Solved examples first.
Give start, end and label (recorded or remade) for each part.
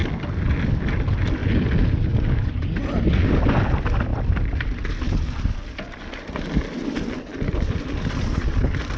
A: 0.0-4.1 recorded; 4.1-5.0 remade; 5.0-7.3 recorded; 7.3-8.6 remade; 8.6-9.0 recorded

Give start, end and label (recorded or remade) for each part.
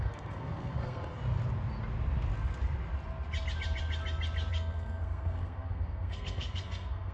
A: 0.0-1.2 remade; 1.2-4.5 recorded; 4.5-7.1 remade